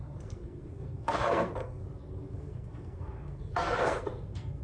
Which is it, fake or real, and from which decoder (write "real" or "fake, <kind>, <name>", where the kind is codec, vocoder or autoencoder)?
fake, codec, SNAC